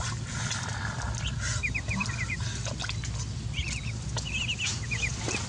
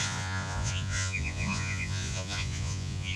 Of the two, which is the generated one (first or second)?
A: second